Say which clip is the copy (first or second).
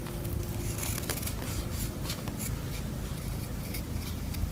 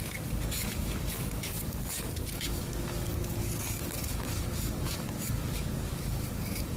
second